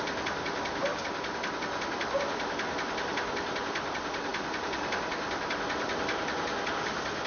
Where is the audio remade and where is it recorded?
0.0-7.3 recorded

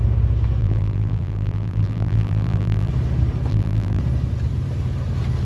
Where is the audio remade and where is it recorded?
0.0-0.6 recorded; 0.6-2.9 remade; 2.9-3.5 recorded; 3.5-4.0 remade; 4.0-5.5 recorded

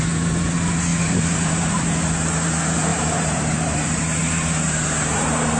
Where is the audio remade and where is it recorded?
0.0-0.9 recorded; 0.9-1.9 remade; 1.9-2.9 recorded; 2.9-4.0 remade; 4.0-5.6 recorded